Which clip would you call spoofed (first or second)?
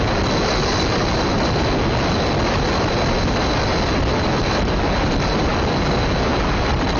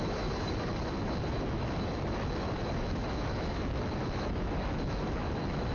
second